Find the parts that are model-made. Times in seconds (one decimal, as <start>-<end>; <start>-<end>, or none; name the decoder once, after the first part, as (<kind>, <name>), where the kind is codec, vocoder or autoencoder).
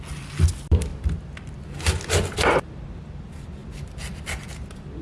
3.6-4.3 (vocoder, BigVGAN v2)